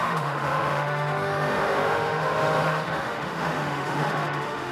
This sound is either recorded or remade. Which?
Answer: remade